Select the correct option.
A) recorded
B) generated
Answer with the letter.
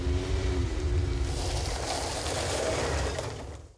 A